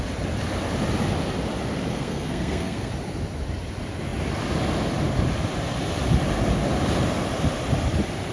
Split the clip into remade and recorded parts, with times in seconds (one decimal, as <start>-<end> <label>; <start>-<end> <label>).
0.0-1.9 recorded; 1.9-2.9 remade; 2.9-8.3 recorded